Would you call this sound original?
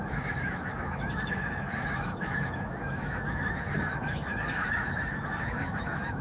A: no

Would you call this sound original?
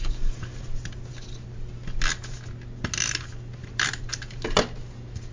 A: yes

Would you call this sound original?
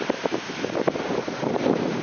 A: yes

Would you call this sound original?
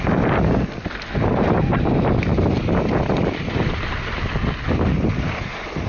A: yes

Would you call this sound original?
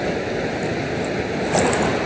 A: yes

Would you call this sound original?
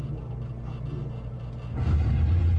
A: yes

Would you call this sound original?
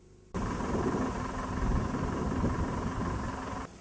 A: no